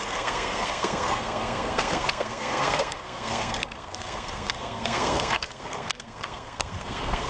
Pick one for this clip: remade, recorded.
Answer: remade